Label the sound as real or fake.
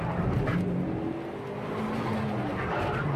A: real